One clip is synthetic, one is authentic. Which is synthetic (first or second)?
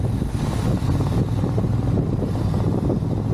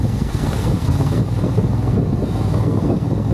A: second